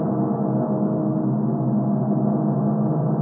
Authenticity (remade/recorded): recorded